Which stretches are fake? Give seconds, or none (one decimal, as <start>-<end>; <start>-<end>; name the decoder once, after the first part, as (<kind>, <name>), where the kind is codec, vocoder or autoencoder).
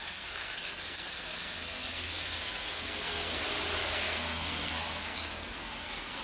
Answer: 0.0-3.4 (codec, SNAC); 3.8-6.2